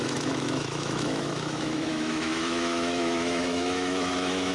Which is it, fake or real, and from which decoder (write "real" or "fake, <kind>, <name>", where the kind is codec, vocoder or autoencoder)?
fake, autoencoder, DAC-VAE